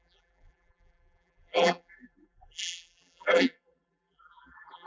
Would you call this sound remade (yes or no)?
yes